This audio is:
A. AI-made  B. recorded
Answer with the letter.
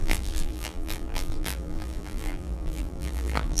A